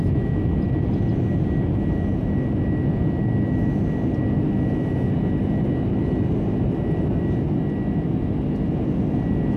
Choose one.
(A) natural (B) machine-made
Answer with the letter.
A